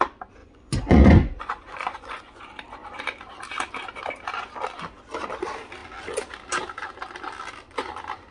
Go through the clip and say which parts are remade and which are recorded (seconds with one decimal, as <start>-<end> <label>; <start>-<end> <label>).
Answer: 0.0-0.4 recorded; 0.4-2.4 remade; 2.4-8.3 recorded